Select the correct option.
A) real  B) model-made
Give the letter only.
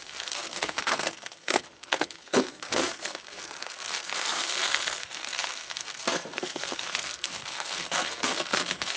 B